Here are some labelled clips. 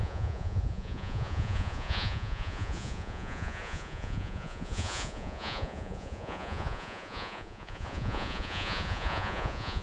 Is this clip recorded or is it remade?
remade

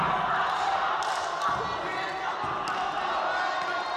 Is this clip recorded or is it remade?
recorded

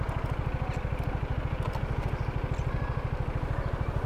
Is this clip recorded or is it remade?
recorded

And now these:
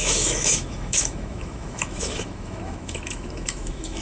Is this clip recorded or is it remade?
remade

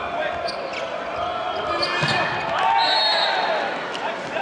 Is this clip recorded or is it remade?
recorded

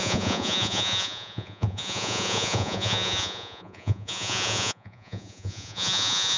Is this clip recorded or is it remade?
remade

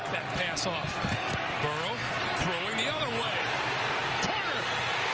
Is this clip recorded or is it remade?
recorded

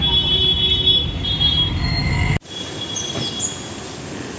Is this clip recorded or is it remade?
recorded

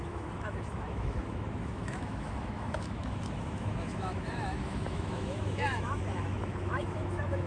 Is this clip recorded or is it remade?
remade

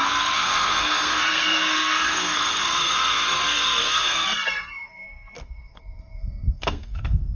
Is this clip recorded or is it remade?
remade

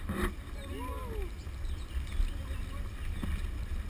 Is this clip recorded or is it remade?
recorded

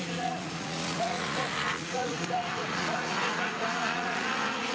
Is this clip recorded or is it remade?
remade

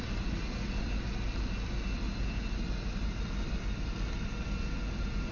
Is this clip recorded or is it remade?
recorded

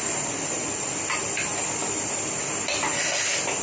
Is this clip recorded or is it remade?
recorded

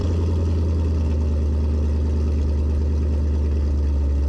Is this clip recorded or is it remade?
recorded